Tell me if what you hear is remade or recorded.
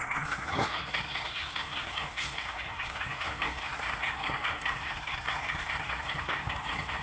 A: remade